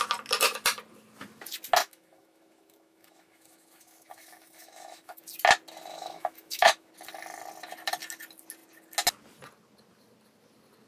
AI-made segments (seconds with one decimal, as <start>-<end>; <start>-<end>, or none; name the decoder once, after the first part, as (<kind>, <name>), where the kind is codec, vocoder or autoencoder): 1.8-5.2 (autoencoder, DAC-VAE); 5.9-6.9